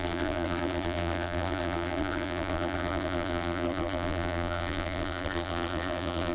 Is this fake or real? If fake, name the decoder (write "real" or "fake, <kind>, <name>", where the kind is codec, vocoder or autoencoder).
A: fake, vocoder, BigVGAN v2